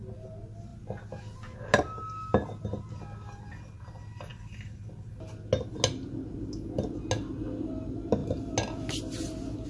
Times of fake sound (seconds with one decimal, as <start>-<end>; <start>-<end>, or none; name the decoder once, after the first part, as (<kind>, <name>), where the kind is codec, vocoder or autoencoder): none